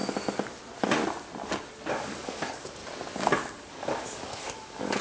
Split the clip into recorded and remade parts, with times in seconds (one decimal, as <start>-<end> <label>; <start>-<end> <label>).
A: 0.0-1.9 recorded; 1.9-2.8 remade; 2.8-3.7 recorded; 3.7-5.0 remade